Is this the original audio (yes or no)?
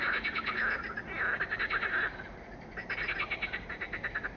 yes